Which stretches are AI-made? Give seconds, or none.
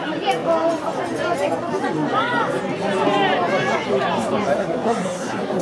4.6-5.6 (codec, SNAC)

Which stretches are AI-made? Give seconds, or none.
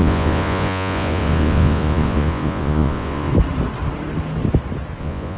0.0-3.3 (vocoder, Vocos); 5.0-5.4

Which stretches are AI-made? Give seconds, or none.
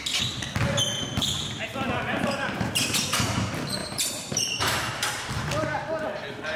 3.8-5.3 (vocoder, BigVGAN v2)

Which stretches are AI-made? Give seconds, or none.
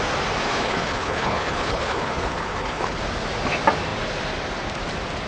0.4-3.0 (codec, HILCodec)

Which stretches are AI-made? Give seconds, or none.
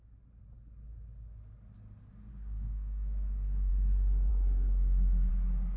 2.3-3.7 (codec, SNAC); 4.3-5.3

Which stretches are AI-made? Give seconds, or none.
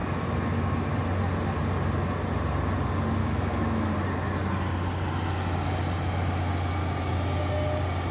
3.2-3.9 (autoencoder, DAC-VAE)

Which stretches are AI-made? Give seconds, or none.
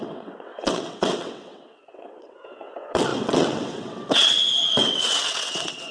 0.0-5.9 (vocoder, WaveNeXt)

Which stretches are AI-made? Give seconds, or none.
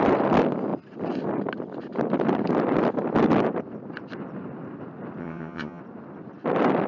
5.2-5.8 (vocoder, HiFi-GAN)